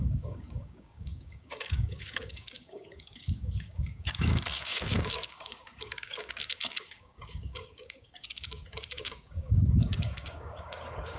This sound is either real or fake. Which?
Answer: fake